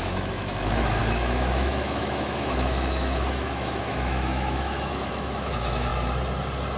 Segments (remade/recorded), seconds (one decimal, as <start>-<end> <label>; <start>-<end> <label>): 0.0-5.9 remade; 5.9-6.8 recorded